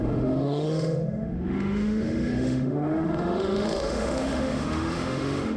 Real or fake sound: fake